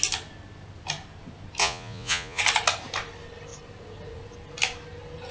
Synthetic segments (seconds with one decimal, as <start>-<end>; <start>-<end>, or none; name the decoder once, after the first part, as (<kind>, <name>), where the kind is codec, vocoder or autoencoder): 1.6-2.4 (vocoder, Vocos)